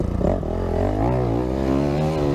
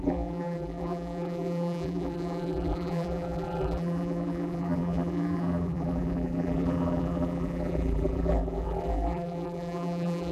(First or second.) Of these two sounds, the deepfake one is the second